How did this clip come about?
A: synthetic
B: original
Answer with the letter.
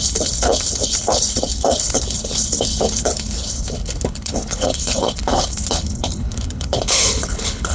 A